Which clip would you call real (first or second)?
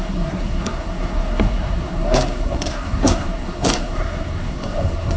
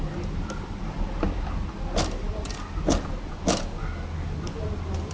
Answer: second